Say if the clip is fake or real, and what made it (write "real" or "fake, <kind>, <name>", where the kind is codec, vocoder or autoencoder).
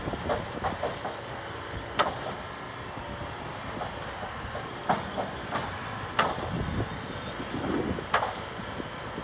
real